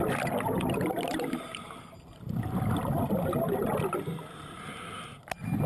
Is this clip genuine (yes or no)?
yes